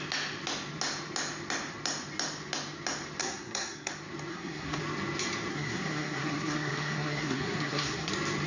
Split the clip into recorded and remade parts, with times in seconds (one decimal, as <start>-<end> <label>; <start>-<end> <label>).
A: 0.0-3.2 recorded; 3.2-3.9 remade; 3.9-4.3 recorded; 4.3-4.8 remade; 4.8-5.5 recorded; 5.5-8.1 remade; 8.1-8.5 recorded